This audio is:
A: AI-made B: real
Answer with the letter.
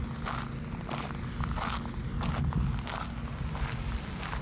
B